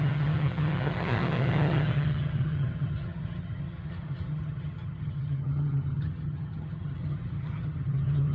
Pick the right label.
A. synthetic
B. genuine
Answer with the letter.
A